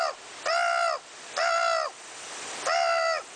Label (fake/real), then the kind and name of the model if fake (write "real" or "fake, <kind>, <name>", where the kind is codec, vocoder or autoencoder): real